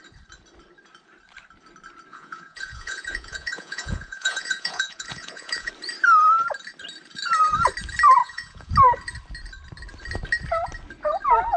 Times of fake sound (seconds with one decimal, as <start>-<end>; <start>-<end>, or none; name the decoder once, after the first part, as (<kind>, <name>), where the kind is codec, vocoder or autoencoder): 2.1-5.7 (vocoder, Vocos); 8.2-8.7